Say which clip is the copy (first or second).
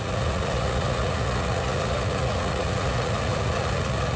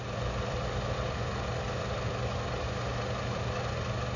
first